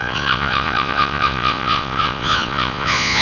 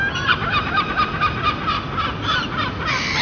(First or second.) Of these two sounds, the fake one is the first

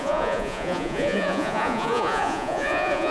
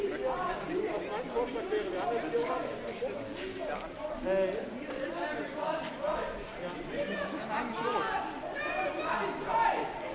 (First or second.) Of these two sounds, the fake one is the first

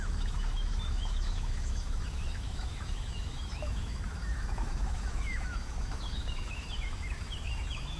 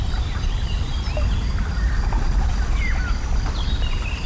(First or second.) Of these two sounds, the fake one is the first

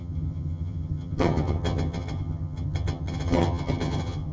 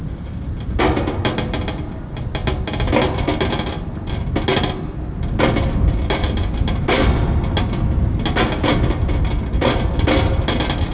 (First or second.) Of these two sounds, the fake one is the first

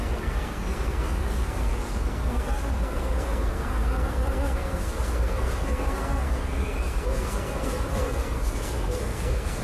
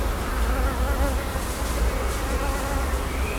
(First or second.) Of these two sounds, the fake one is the first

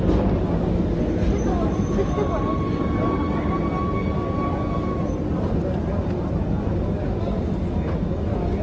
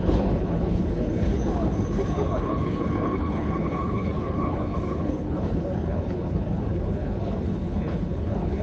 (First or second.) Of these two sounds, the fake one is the second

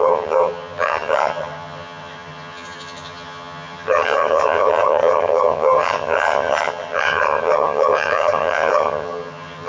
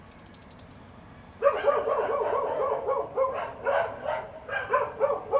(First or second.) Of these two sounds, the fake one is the first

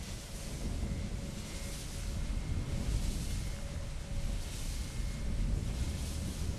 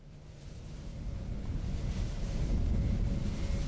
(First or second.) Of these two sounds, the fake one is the second